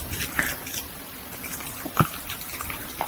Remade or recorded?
recorded